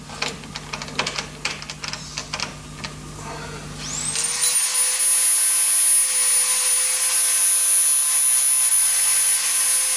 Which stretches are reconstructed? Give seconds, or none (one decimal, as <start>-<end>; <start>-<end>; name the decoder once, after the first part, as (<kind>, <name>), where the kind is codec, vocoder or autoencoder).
none